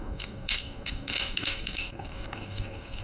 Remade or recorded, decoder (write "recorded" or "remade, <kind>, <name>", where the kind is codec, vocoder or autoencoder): remade, codec, DAC